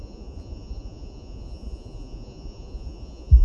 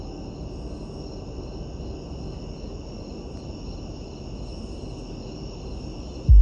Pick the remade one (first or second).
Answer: first